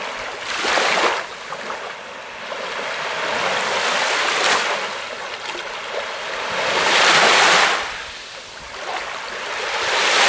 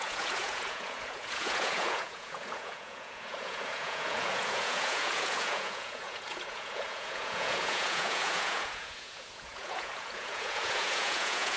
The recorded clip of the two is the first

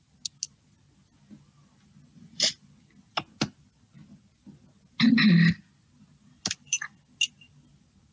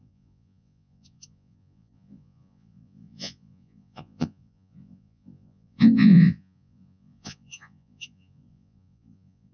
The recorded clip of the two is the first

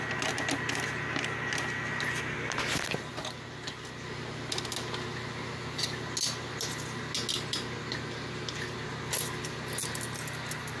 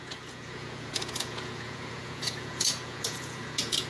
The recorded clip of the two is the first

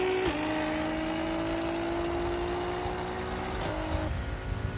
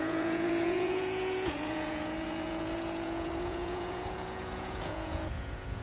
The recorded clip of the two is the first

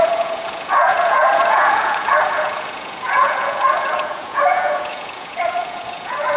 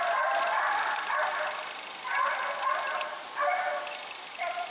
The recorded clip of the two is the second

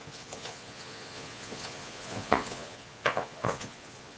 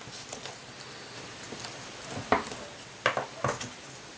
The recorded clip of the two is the second